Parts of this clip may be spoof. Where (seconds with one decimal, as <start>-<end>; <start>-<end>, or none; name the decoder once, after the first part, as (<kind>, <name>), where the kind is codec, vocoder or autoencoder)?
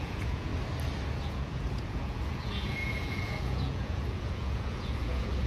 0.0-0.5 (vocoder, Vocos); 1.2-5.5